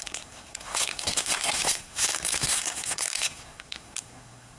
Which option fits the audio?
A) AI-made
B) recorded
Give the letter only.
A